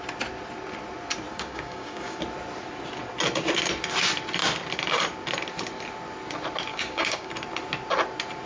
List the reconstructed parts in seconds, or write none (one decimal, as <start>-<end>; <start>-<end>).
1.3-2.2; 6.7-7.3